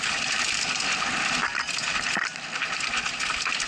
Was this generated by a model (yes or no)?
no